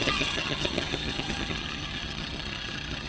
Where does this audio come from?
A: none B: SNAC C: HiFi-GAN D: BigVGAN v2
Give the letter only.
C